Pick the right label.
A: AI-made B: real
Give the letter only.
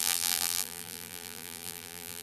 A